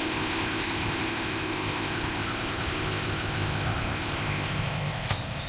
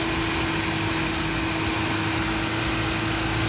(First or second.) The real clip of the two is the second